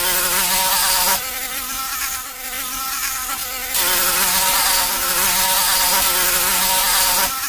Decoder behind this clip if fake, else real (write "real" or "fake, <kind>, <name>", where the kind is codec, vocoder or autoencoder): real